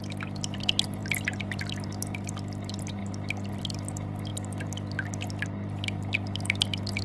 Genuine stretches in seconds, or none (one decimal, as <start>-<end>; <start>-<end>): 0.0-7.0